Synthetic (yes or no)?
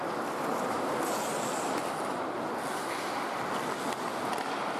no